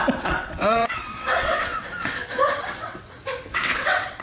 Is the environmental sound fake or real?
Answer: fake